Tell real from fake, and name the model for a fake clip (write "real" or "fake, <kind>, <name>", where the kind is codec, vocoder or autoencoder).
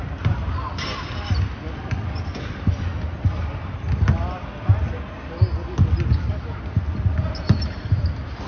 real